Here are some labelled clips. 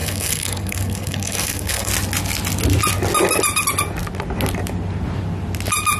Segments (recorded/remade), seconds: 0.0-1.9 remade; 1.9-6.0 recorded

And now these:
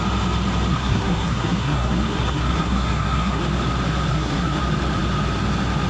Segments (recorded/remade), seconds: 0.0-0.7 recorded; 0.7-3.4 remade; 3.4-4.1 recorded; 4.1-4.6 remade; 4.6-5.9 recorded

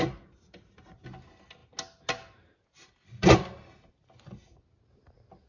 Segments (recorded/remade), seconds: 0.0-5.5 recorded

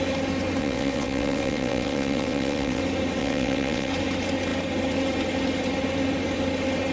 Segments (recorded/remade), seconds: 0.0-0.6 recorded; 0.6-2.8 remade; 2.8-3.2 recorded; 3.2-3.9 remade; 3.9-6.9 recorded